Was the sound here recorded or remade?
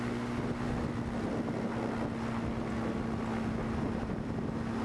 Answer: recorded